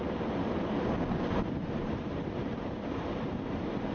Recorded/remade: remade